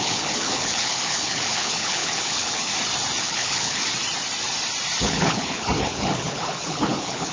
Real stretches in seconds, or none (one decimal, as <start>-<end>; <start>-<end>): 2.7-3.2; 3.8-5.0